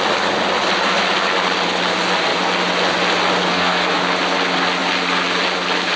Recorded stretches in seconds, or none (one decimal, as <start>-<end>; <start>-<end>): 0.0-3.4; 4.0-6.0